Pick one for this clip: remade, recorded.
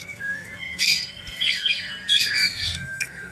remade